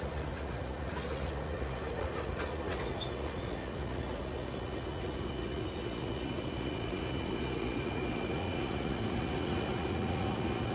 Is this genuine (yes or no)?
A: no